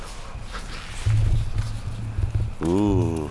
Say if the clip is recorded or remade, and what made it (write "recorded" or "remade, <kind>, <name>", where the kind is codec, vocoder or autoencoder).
recorded